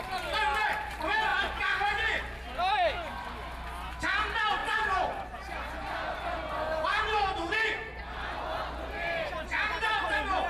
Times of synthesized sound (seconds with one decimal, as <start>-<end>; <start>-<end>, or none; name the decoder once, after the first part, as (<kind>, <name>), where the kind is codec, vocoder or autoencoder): 4.6-5.2 (vocoder, BigVGAN v2); 6.9-7.8